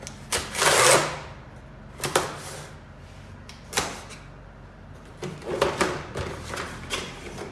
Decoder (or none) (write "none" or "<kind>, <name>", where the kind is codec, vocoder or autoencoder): none